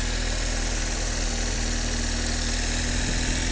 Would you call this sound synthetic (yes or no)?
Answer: no